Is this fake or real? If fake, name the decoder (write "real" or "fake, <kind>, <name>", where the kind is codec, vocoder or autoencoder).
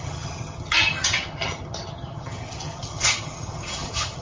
fake, vocoder, HiFi-GAN